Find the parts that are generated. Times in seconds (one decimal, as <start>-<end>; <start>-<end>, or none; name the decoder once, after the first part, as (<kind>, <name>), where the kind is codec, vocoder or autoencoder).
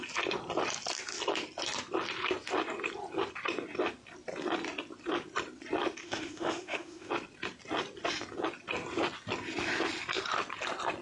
6.0-7.1 (autoencoder, DAC-VAE)